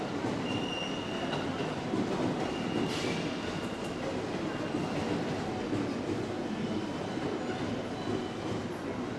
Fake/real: real